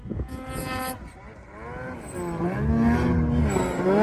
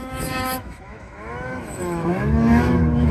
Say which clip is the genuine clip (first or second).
first